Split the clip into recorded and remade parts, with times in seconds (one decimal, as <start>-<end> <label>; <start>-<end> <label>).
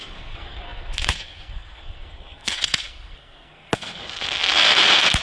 0.0-5.2 remade